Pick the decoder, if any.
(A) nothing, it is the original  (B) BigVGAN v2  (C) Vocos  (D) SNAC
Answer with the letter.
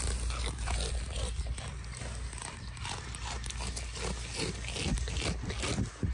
A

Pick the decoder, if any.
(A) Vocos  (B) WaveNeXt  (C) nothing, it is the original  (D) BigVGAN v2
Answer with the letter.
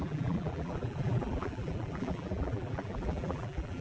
D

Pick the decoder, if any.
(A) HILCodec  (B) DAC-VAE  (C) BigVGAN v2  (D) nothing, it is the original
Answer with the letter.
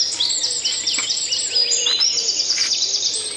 D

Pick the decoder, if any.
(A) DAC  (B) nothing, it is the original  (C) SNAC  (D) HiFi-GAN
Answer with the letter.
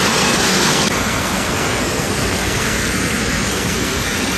C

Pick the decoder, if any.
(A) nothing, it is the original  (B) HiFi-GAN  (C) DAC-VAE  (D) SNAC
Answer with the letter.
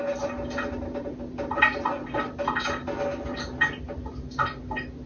A